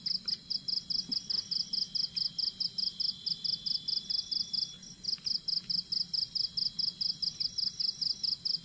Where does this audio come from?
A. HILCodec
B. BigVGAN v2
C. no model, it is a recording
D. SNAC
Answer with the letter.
C